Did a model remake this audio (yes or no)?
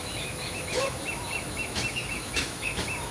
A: yes